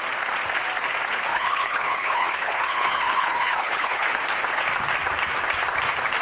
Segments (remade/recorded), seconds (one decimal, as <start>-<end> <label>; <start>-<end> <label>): 0.0-1.3 recorded; 1.3-4.2 remade; 4.2-6.2 recorded

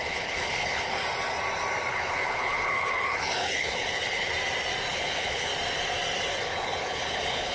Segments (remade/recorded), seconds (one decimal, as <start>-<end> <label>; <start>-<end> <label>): 0.0-1.0 remade; 1.0-1.9 recorded; 1.9-4.3 remade; 4.3-4.9 recorded; 4.9-5.5 remade; 5.5-6.3 recorded; 6.3-7.5 remade

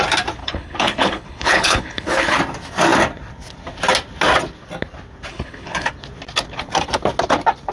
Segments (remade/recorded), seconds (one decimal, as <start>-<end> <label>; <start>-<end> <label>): 0.0-0.4 recorded; 0.4-2.4 remade; 2.4-5.3 recorded; 5.3-5.9 remade; 5.9-7.7 recorded